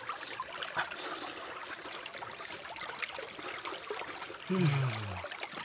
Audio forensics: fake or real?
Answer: real